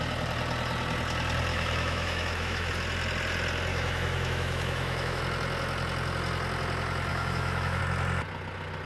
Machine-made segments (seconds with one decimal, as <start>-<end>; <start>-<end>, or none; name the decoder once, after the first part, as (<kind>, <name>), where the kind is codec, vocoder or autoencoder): 1.5-2.7 (autoencoder, DAC-VAE); 3.7-5.2; 7.1-7.8